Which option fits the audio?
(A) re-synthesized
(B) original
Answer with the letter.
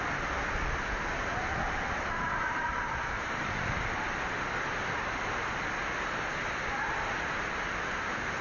B